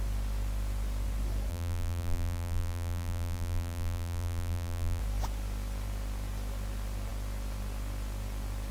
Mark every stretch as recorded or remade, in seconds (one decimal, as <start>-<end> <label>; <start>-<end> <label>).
0.0-1.5 recorded; 1.5-5.0 remade; 5.0-8.7 recorded